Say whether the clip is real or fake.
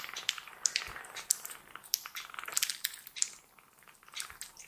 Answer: real